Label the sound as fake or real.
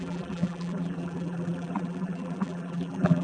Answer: fake